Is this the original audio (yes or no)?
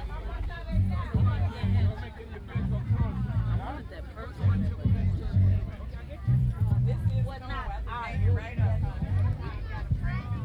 no